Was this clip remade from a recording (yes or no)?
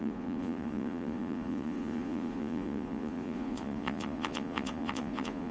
yes